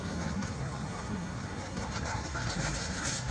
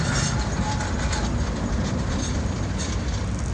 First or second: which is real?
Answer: second